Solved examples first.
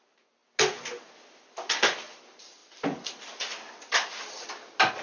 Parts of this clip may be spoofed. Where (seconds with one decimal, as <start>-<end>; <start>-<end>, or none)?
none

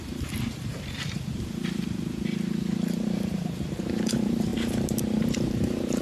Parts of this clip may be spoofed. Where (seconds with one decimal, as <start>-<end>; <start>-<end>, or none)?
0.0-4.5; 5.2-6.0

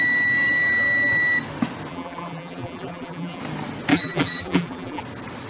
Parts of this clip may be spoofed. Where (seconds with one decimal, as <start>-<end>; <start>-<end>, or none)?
1.9-3.4; 3.9-5.0

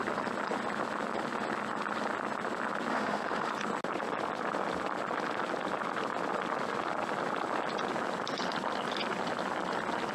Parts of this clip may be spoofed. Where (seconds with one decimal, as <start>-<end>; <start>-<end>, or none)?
2.9-3.5